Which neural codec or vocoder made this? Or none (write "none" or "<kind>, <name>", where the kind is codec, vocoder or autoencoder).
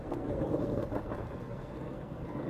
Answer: codec, SNAC